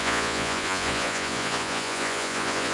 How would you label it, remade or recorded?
remade